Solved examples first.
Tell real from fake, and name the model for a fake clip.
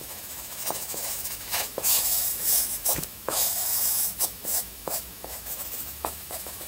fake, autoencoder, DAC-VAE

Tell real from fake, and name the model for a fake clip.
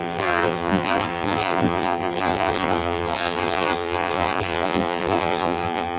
fake, vocoder, BigVGAN v2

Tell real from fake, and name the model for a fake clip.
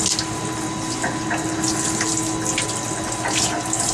real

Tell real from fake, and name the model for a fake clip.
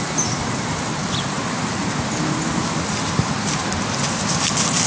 real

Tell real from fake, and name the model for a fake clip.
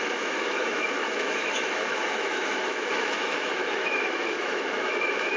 fake, autoencoder, DAC-VAE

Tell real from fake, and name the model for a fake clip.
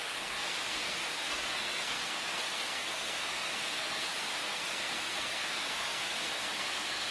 fake, codec, SNAC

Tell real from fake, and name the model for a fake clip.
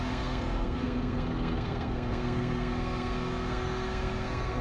fake, codec, SNAC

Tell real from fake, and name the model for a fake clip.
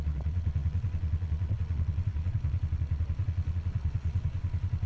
fake, vocoder, Vocos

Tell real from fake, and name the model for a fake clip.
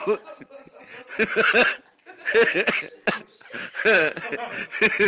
real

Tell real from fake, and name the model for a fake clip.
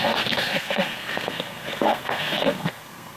fake, codec, SNAC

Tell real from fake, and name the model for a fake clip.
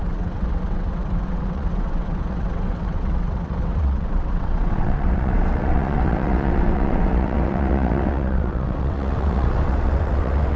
fake, vocoder, WaveNeXt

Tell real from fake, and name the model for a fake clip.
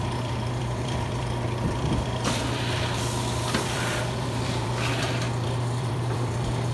fake, vocoder, BigVGAN v2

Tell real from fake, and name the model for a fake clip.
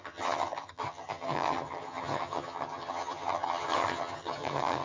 fake, vocoder, HiFi-GAN